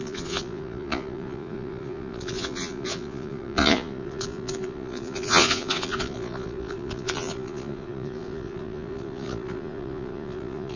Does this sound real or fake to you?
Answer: fake